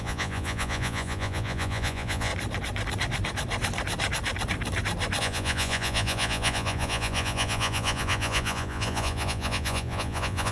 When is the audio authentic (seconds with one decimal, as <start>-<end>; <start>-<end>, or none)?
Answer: 2.3-5.2